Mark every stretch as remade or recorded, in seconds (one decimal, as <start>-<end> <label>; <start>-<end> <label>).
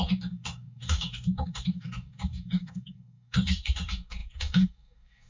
0.0-5.3 remade